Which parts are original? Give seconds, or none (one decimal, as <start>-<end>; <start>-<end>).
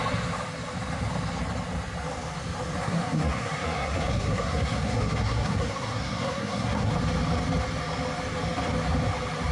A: 0.0-2.8; 6.9-9.5